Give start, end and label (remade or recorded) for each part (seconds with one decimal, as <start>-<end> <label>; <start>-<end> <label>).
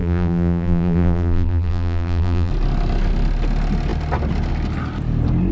0.0-2.5 remade; 2.5-5.5 recorded